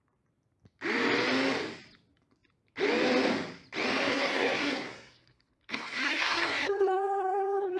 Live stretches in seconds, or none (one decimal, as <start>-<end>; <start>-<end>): 0.0-4.1